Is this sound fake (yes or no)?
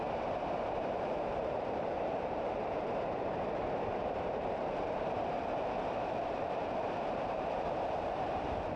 yes